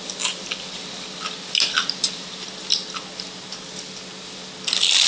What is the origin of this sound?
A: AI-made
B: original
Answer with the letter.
B